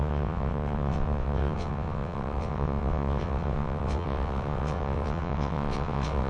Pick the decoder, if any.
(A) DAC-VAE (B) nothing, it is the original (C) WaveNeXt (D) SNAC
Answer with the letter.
C